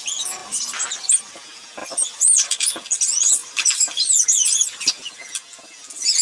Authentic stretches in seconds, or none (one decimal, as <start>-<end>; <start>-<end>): 0.0-0.4; 1.3-1.8; 2.7-3.4; 4.9-6.2